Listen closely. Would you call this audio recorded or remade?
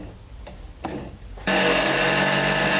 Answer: recorded